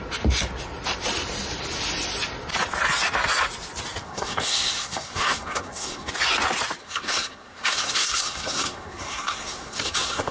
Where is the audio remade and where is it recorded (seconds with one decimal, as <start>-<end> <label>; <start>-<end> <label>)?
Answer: 0.0-4.0 recorded; 4.0-6.1 remade; 6.1-6.8 recorded; 6.8-10.3 remade